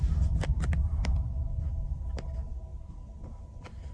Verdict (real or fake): real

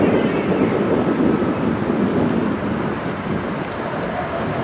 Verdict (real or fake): real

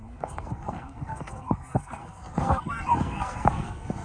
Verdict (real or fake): fake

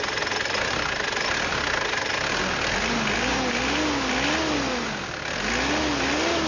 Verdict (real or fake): real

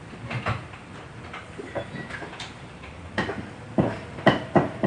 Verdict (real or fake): fake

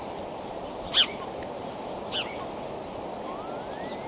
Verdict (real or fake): real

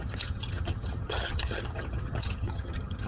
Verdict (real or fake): fake